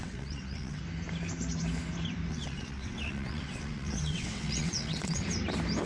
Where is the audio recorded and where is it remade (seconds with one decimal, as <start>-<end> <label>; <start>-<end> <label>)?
0.0-0.8 remade; 0.8-2.3 recorded; 2.3-5.2 remade; 5.2-5.9 recorded